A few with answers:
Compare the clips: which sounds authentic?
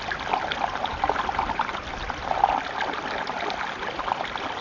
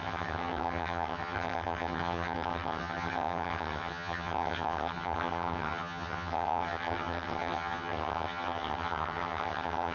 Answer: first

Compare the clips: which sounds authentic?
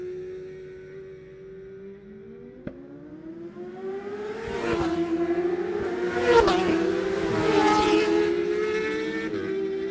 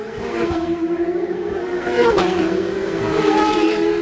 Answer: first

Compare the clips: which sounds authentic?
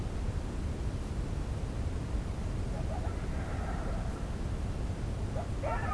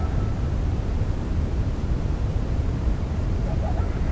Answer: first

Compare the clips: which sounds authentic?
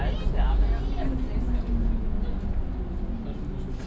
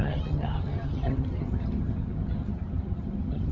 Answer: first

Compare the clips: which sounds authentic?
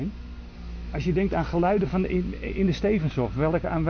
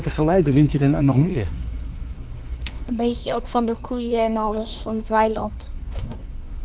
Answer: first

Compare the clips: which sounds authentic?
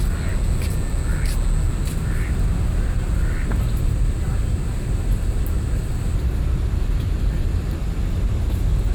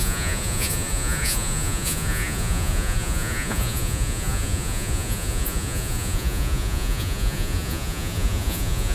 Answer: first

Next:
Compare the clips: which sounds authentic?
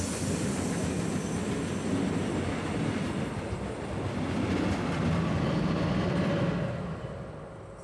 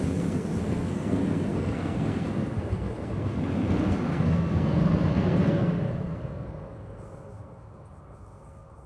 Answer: first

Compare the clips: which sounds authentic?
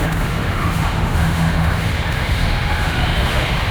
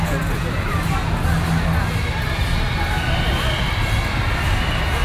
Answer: second